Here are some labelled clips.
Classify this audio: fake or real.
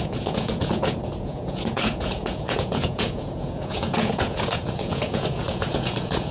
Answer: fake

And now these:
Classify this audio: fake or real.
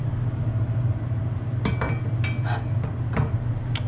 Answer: real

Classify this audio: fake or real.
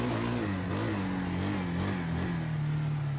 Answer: real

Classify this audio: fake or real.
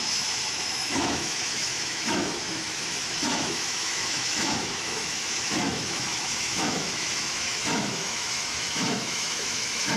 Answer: fake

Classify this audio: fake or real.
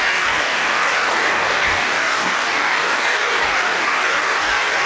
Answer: fake